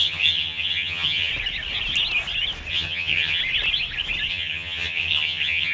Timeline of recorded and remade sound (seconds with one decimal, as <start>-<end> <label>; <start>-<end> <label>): 0.0-1.3 remade; 1.3-2.7 recorded; 2.7-3.4 remade; 3.4-4.3 recorded; 4.3-5.7 remade

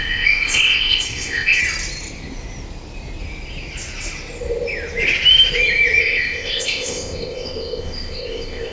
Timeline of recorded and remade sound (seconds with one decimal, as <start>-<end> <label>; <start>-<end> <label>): 0.0-1.6 remade; 1.6-6.0 recorded; 6.0-8.7 remade